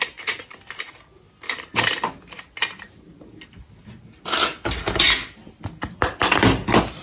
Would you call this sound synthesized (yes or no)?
no